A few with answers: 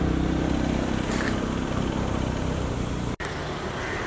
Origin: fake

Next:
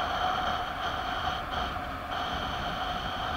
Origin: real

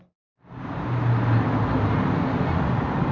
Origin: real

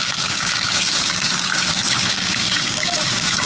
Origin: fake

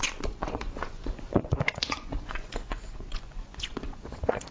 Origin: fake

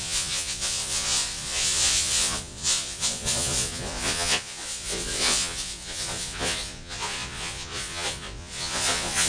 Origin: fake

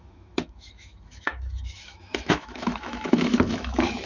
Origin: fake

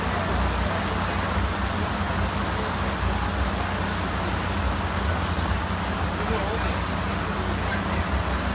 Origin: real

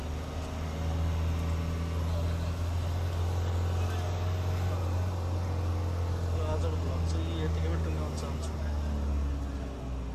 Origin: real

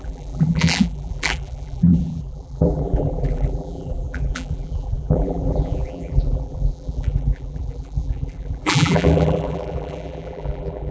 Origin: fake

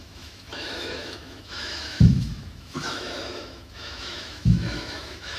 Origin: fake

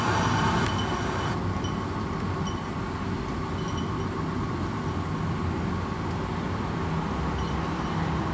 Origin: real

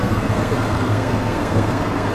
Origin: fake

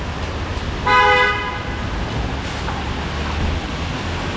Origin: real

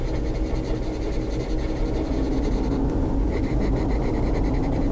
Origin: real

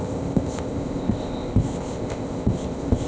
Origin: fake